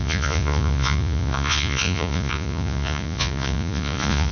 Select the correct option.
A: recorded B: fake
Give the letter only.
B